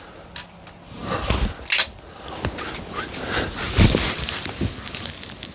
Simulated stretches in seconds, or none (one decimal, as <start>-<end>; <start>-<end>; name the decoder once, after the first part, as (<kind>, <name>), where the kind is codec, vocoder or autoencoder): none